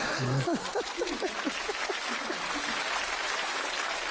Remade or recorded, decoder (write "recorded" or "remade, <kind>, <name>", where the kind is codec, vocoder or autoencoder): recorded